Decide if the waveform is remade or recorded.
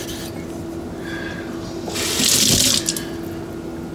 recorded